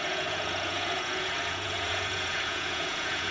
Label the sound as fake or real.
fake